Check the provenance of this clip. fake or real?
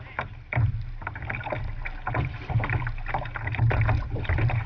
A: real